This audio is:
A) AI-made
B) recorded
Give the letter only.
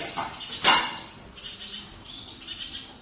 B